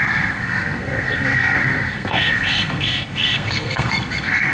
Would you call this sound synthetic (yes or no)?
yes